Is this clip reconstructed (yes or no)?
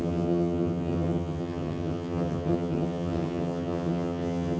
yes